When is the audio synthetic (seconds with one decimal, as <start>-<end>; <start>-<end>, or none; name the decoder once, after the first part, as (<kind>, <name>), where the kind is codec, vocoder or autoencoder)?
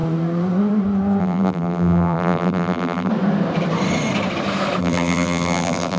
1.2-3.1 (vocoder, BigVGAN v2); 4.8-6.0